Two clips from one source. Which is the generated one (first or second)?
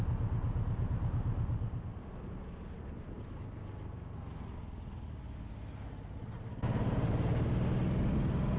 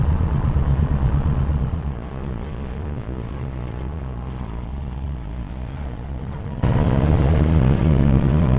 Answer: second